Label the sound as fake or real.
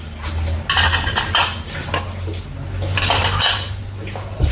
real